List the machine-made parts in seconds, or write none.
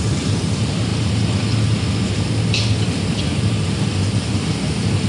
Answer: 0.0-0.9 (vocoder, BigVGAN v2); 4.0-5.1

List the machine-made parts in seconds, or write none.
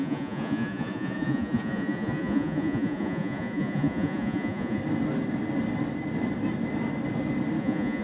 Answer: 0.0-4.8 (vocoder, Vocos); 7.6-8.0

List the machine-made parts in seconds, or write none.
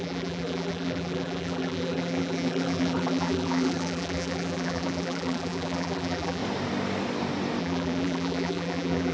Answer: 0.0-6.4 (vocoder, BigVGAN v2); 7.6-9.1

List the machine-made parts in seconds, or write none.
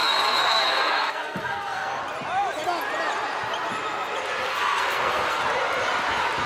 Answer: 0.0-2.0 (codec, SNAC); 4.5-5.4